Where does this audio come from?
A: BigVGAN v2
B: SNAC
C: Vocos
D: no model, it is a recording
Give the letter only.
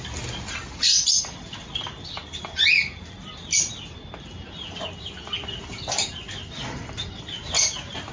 A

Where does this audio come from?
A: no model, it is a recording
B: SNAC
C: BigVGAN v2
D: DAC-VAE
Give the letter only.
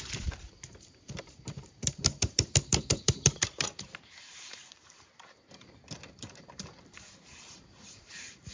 C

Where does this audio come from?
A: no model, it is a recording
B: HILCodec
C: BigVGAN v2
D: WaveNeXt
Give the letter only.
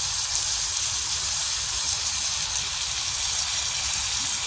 A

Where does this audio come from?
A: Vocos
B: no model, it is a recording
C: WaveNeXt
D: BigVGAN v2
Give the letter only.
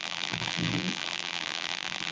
D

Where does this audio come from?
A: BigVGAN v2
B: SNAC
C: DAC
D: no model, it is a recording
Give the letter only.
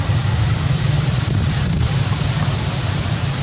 A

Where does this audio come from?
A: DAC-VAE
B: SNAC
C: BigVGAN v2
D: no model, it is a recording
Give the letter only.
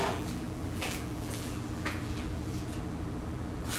C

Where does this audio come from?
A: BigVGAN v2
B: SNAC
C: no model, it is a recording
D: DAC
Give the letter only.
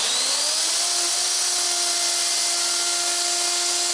C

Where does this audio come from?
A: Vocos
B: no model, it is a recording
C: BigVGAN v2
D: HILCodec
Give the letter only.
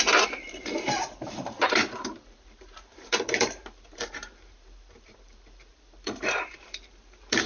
C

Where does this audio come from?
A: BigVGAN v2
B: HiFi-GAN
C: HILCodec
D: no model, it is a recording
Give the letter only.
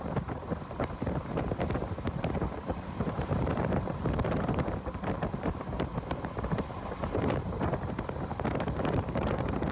A